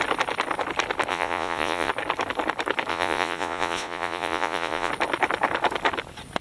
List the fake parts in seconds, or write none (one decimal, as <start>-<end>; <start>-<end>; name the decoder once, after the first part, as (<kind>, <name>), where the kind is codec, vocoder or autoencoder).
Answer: 1.1-1.9 (vocoder, Vocos); 2.9-4.9